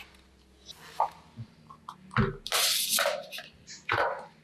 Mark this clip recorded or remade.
recorded